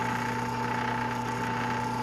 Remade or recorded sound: recorded